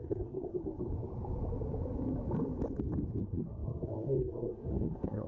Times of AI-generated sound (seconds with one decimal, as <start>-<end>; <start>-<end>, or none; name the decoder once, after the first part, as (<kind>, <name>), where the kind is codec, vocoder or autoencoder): 0.0-0.6 (codec, SNAC); 3.2-5.3